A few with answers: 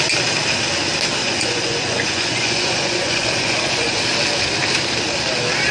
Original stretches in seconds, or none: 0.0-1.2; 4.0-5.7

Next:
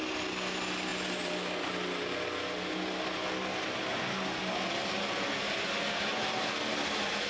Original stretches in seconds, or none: 0.0-7.3

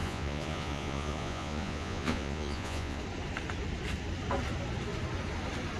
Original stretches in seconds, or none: 3.0-5.8

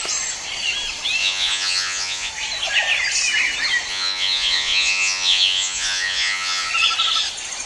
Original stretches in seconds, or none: 0.0-1.2; 2.3-3.9; 6.7-7.7

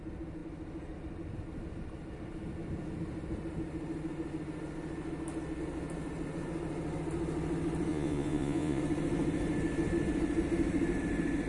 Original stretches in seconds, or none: 0.0-7.9; 8.8-11.5

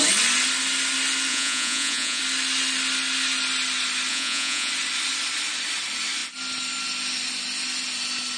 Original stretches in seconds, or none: 0.0-1.3; 2.2-4.1; 4.7-8.4